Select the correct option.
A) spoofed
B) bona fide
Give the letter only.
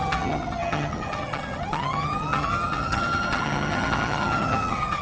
A